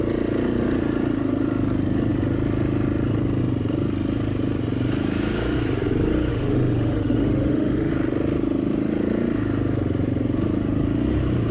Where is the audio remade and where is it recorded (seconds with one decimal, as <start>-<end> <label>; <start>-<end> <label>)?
0.0-6.3 recorded; 6.3-7.9 remade; 7.9-11.5 recorded